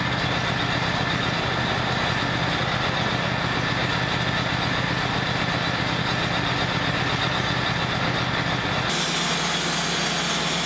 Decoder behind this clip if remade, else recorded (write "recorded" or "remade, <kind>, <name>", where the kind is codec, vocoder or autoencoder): recorded